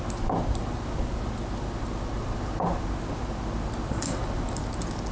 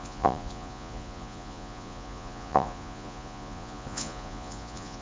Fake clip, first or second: second